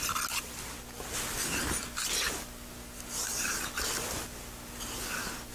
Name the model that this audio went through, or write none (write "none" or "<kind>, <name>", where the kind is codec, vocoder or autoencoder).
none